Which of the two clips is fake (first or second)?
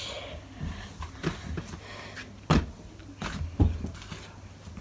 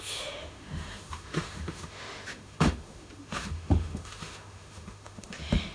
second